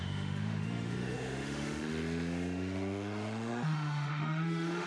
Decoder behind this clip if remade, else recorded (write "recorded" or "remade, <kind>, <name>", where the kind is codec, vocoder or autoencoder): remade, autoencoder, DAC-VAE